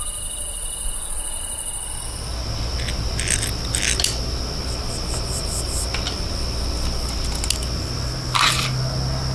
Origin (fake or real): real